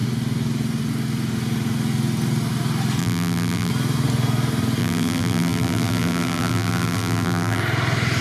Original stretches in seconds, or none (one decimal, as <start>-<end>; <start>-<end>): 0.0-3.0; 3.7-4.8; 7.6-8.2